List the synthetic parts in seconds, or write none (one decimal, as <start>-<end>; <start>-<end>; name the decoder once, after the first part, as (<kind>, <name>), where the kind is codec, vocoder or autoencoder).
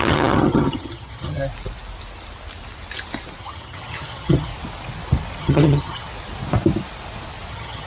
0.0-1.4 (vocoder, HiFi-GAN); 3.4-4.5; 5.4-6.1; 7.5-7.9